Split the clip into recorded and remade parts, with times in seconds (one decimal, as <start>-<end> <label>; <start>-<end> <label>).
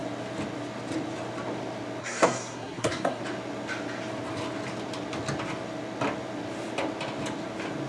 0.0-2.0 recorded; 2.0-3.2 remade; 3.2-7.9 recorded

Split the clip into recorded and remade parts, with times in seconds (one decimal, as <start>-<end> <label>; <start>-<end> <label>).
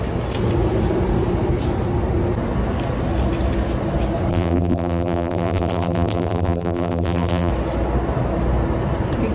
0.0-4.3 recorded; 4.3-7.5 remade; 7.5-9.3 recorded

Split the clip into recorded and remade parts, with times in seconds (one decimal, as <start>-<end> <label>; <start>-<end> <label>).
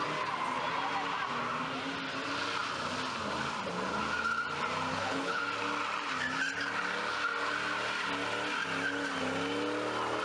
0.0-4.9 recorded; 4.9-5.4 remade; 5.4-10.2 recorded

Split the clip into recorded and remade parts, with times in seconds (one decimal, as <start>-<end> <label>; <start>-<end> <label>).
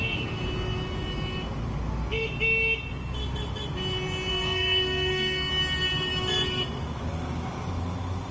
0.0-4.3 recorded; 4.3-5.5 remade; 5.5-8.3 recorded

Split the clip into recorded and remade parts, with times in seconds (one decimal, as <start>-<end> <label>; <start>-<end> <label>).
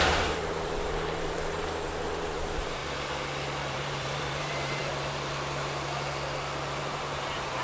0.0-2.8 remade; 2.8-3.7 recorded; 3.7-4.9 remade; 4.9-6.8 recorded; 6.8-7.6 remade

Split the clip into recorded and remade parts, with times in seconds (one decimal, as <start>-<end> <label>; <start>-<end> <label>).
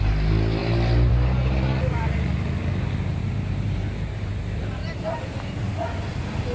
0.0-3.2 recorded; 3.2-4.3 remade; 4.3-4.8 recorded; 4.8-5.6 remade; 5.6-6.5 recorded